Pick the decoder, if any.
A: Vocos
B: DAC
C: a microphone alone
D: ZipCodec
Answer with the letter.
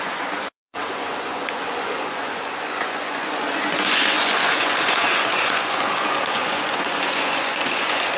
A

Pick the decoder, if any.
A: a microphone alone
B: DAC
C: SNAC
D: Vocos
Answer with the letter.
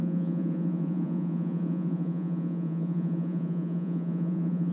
D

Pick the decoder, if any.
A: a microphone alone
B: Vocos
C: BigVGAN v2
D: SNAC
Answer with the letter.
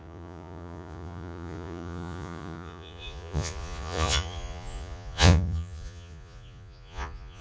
B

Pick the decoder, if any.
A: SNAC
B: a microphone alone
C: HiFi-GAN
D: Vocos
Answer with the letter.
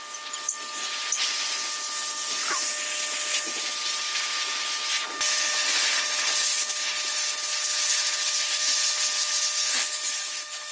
B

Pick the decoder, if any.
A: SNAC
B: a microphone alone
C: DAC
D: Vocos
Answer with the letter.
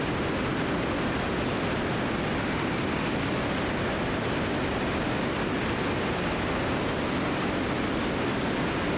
B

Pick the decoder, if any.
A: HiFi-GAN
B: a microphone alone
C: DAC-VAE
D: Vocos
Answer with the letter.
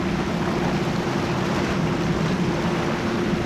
B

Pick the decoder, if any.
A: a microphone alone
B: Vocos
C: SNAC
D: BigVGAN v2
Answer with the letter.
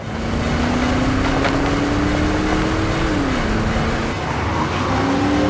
A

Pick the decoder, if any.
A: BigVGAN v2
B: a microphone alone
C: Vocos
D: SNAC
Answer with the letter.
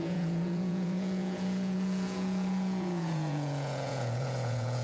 C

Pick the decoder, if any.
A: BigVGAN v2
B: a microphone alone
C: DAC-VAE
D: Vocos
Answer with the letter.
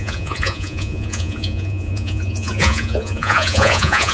D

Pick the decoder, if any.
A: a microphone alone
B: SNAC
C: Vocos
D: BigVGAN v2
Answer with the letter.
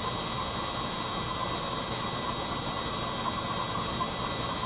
A